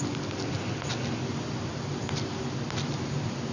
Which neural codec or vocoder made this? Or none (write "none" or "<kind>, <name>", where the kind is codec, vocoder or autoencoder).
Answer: none